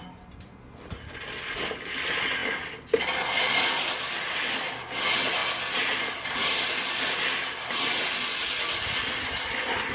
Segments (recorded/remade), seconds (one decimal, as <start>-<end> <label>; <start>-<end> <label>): 0.0-9.9 recorded